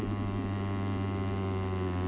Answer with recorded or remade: recorded